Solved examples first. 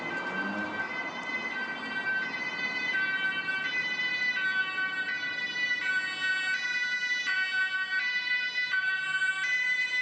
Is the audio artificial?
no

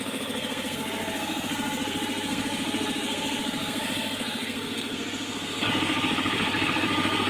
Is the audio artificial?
yes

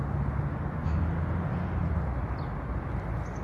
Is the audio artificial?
no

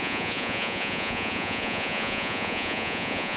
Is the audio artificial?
yes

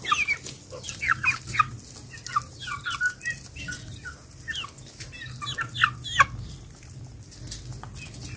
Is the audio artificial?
no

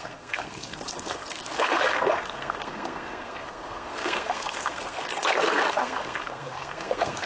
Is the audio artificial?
yes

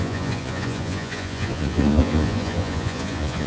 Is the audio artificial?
yes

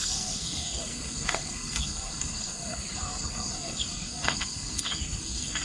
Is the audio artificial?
yes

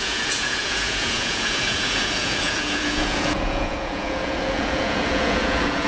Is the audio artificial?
yes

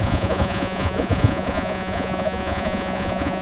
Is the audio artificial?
yes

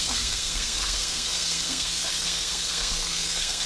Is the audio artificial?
yes